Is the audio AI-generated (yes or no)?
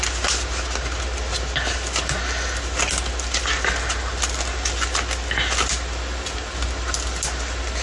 no